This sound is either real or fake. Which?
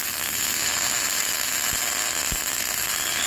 real